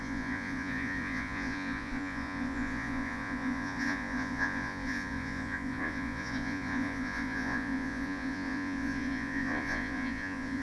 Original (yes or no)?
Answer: no